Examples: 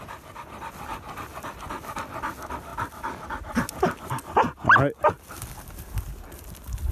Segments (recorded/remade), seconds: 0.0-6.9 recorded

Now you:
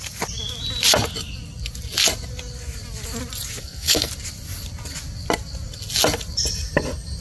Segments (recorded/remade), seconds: 0.0-3.6 recorded; 3.6-4.1 remade; 4.1-7.2 recorded

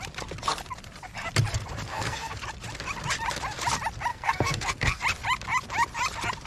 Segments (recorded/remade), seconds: 0.0-1.9 recorded; 1.9-2.4 remade; 2.4-4.1 recorded; 4.1-5.0 remade; 5.0-6.5 recorded

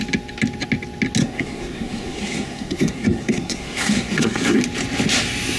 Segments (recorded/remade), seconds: 0.0-1.2 recorded; 1.2-4.6 remade; 4.6-5.6 recorded